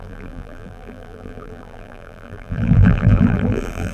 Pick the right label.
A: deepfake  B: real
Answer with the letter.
A